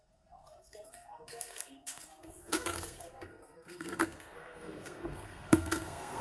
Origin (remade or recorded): remade